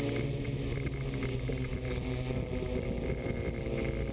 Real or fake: real